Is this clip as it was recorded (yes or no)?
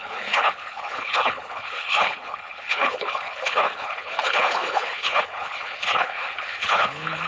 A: no